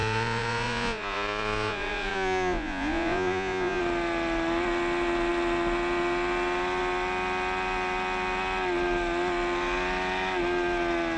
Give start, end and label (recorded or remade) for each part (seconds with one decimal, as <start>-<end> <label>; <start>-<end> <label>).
0.0-3.8 remade; 3.8-11.2 recorded